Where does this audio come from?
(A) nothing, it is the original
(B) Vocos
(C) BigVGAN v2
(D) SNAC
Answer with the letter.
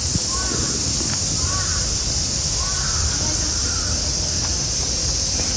A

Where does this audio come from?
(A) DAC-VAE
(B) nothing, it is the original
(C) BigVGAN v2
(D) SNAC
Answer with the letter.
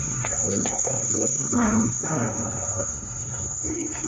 D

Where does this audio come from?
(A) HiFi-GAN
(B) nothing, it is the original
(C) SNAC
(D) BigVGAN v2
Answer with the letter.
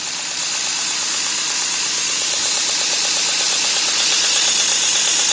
B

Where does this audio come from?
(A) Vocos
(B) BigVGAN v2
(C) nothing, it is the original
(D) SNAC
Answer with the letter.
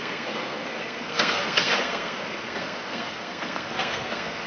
D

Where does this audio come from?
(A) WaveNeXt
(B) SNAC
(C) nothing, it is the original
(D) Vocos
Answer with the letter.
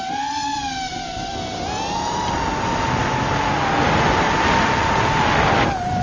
C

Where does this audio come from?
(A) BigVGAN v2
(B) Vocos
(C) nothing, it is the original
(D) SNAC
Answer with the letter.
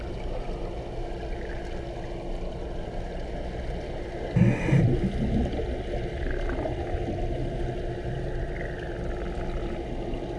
C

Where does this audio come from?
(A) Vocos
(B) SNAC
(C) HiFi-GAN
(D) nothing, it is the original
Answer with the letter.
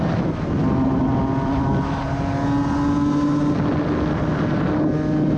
D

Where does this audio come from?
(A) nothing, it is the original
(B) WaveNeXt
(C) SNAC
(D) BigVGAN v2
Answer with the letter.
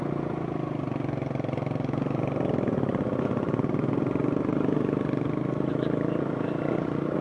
A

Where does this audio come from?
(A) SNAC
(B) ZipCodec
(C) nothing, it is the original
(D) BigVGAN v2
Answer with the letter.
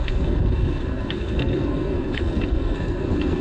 A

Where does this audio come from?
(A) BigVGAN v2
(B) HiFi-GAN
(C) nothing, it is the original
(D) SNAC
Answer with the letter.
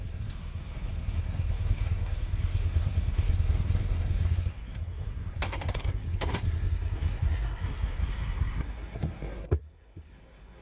D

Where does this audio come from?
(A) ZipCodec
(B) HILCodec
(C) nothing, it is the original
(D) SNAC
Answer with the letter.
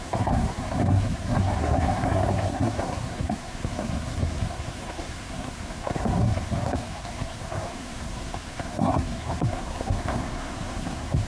D